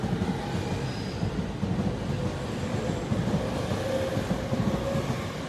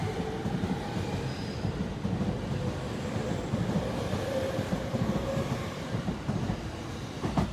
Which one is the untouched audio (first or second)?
first